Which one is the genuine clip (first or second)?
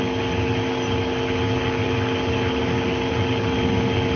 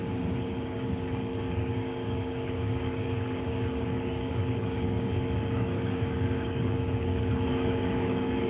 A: first